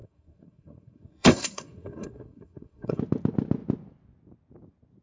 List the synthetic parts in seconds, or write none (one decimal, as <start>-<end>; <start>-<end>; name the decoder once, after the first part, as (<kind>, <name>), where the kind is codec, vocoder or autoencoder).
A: 0.0-3.0 (codec, SNAC)